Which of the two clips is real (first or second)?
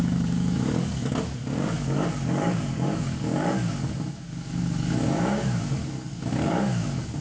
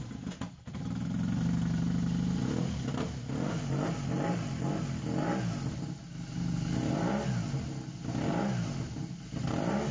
second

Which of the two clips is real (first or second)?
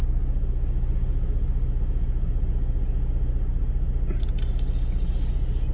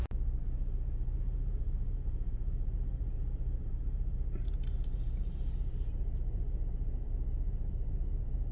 first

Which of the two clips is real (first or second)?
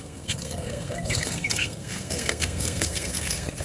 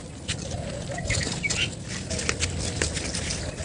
second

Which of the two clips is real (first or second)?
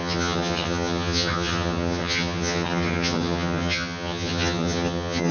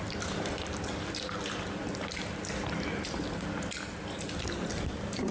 second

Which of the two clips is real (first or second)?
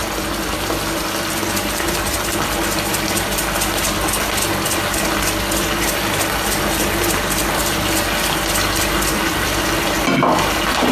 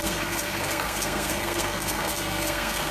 first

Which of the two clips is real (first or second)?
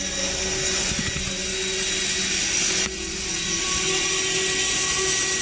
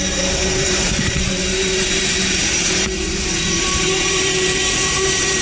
first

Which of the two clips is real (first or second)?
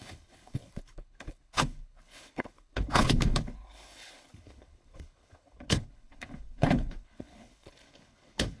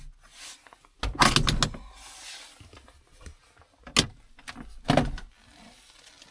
second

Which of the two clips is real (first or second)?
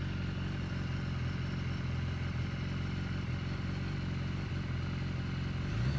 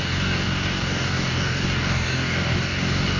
first